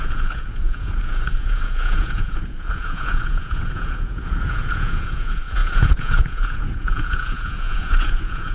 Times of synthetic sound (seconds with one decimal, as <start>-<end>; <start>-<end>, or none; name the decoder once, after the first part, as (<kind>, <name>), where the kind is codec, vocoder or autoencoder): 0.0-8.5 (vocoder, Vocos)